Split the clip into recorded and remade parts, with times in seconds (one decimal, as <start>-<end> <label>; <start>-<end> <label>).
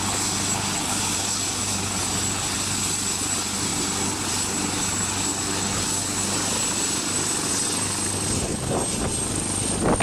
0.0-10.0 recorded